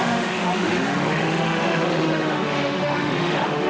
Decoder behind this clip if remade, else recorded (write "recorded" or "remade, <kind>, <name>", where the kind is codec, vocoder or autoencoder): remade, autoencoder, DAC-VAE